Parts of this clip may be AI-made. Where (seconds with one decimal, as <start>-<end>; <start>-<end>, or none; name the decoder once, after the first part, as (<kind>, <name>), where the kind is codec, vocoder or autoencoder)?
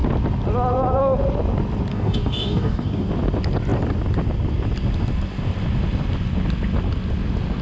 1.9-3.1 (codec, DAC)